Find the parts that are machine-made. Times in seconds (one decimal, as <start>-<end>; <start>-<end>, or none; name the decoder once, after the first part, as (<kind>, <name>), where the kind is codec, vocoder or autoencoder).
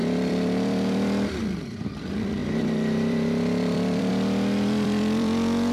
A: 0.0-5.7 (vocoder, BigVGAN v2)